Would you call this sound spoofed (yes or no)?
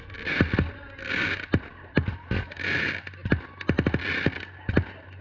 no